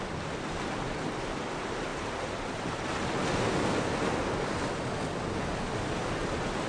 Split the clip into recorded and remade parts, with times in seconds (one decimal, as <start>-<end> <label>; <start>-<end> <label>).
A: 0.0-6.7 recorded